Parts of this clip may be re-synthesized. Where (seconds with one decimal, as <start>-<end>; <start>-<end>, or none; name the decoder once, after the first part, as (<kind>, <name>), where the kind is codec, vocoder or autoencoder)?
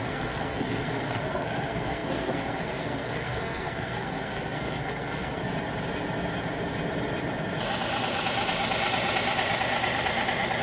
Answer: 0.0-5.4 (codec, SNAC)